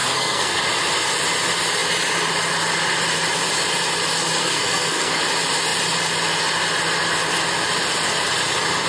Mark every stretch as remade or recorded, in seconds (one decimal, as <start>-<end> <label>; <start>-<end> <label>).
0.0-0.6 remade; 0.6-4.4 recorded; 4.4-5.2 remade; 5.2-8.9 recorded